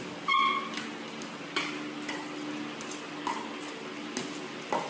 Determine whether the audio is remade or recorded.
recorded